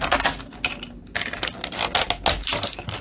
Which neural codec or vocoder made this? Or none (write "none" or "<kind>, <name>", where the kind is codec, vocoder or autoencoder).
none